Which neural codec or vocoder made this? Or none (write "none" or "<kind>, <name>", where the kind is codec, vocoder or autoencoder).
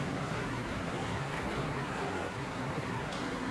codec, SNAC